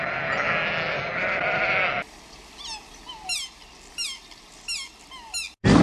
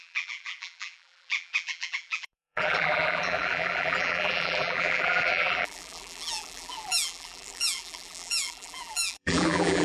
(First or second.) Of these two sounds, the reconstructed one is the second